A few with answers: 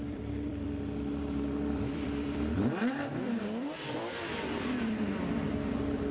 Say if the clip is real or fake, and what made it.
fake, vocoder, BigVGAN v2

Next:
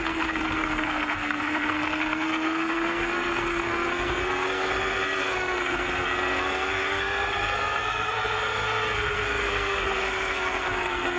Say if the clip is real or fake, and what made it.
fake, codec, SNAC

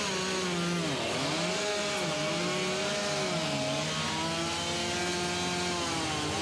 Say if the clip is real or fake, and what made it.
real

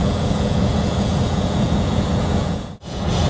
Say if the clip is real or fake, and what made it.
fake, vocoder, Vocos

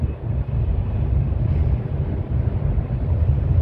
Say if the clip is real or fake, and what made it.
real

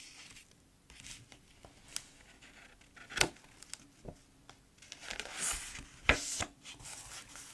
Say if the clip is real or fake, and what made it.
real